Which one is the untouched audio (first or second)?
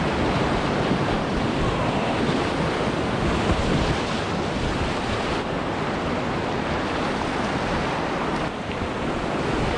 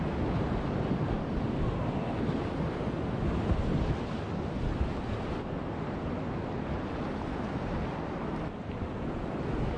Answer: second